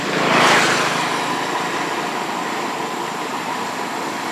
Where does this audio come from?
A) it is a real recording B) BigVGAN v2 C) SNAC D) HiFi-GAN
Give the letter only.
B